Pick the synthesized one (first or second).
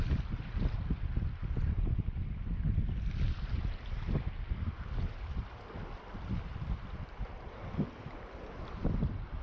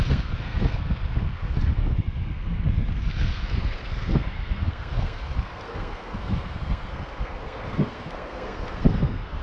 second